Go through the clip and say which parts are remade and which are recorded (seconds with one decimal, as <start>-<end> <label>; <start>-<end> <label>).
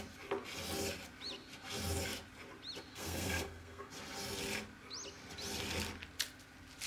0.0-2.9 recorded; 2.9-3.9 remade; 3.9-6.9 recorded